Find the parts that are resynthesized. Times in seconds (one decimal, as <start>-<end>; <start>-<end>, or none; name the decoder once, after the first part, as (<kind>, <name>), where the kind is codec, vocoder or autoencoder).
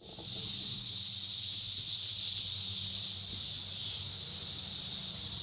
none